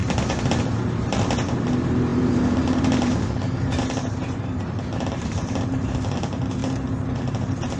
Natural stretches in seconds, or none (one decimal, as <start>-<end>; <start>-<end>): 0.0-0.9; 6.6-7.3